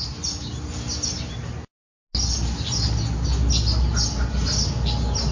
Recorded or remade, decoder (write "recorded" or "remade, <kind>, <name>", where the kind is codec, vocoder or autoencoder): recorded